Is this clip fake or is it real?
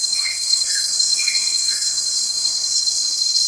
fake